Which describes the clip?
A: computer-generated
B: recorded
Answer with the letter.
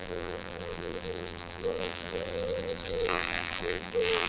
A